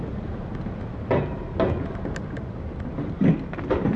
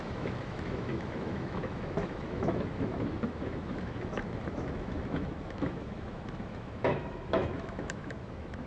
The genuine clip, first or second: first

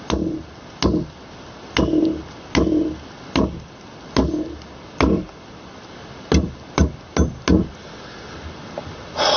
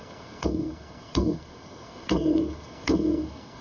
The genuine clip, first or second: first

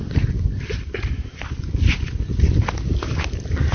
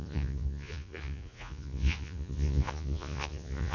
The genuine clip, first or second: first